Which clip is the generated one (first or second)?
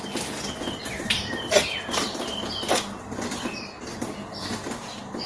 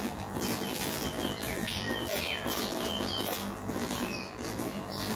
second